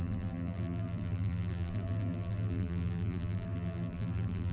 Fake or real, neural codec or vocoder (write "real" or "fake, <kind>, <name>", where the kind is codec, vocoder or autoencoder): fake, vocoder, BigVGAN v2